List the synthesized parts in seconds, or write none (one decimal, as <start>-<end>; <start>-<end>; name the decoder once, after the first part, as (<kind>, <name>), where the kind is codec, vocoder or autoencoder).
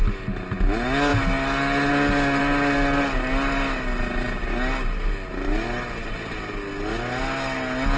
none